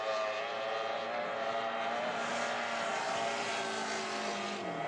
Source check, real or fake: real